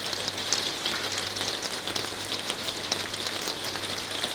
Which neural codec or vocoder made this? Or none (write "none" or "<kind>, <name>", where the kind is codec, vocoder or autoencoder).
none